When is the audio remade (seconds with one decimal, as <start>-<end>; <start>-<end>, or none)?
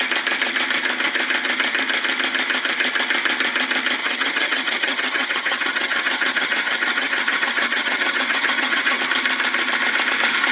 4.0-9.0